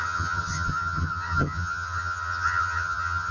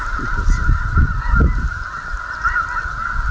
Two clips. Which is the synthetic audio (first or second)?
first